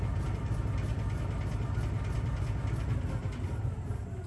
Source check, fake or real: real